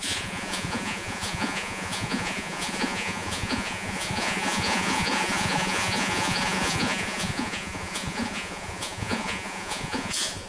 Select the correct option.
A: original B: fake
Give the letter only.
B